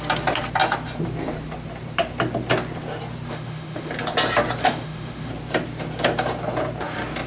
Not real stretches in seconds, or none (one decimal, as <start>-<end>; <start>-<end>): 3.3-3.9; 4.6-5.3